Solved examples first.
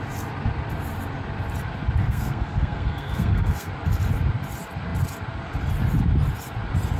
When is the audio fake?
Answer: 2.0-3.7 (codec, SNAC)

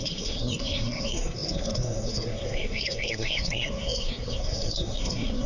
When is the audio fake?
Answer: 0.0-5.5 (codec, SNAC)

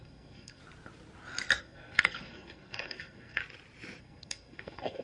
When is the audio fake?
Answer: 0.0-0.6 (codec, SNAC); 1.6-3.4; 4.0-5.0